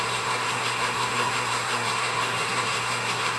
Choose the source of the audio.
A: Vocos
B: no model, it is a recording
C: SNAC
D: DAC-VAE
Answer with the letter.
C